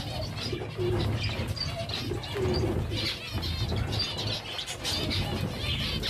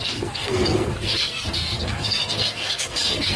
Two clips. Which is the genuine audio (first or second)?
first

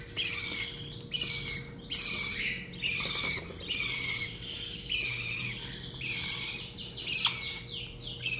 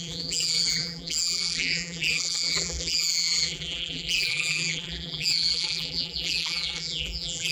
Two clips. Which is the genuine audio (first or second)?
first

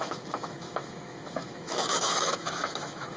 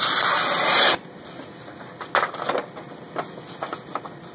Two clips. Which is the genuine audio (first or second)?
second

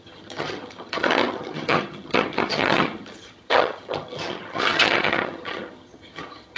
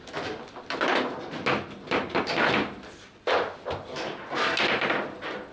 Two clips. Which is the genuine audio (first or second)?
second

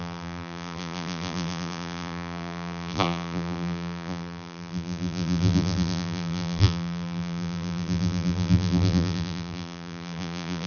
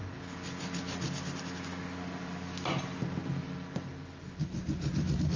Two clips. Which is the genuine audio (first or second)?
second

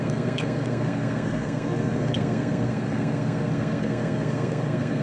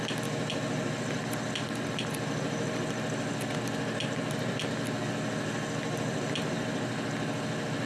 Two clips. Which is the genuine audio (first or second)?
second